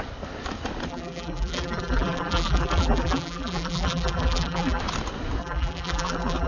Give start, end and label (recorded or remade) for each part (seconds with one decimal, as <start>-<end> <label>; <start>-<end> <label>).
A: 0.0-0.9 recorded; 0.9-4.8 remade; 4.8-5.4 recorded; 5.4-6.5 remade